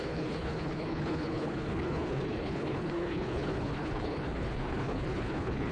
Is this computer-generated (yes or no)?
yes